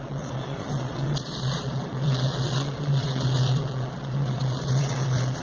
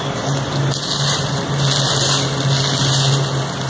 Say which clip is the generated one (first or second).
first